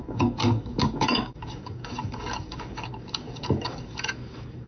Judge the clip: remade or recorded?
remade